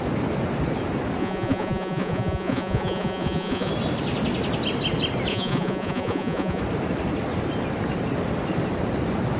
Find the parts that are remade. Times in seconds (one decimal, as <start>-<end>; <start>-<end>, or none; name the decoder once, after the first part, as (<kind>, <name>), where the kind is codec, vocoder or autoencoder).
1.2-3.7 (vocoder, Vocos); 5.3-6.6